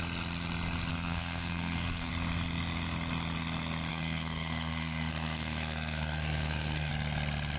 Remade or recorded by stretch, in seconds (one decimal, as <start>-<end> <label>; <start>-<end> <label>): 0.0-0.9 recorded; 0.9-2.1 remade; 2.1-3.9 recorded; 3.9-6.9 remade; 6.9-7.6 recorded